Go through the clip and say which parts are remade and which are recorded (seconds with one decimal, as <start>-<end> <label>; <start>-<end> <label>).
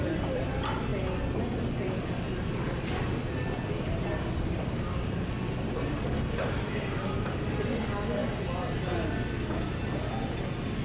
0.0-0.9 remade; 0.9-2.3 recorded; 2.3-8.2 remade; 8.2-10.1 recorded; 10.1-10.8 remade